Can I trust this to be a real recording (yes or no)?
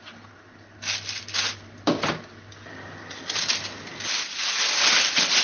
yes